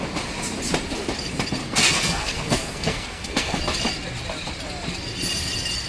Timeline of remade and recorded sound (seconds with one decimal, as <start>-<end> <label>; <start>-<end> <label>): 0.0-1.6 recorded; 1.6-3.6 remade; 3.6-5.9 recorded